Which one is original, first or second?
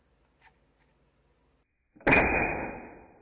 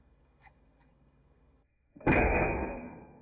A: first